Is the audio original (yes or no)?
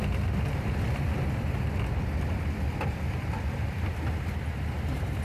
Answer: yes